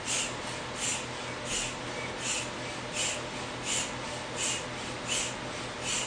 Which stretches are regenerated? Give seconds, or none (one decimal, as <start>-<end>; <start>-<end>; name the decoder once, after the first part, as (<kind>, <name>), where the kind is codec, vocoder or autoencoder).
none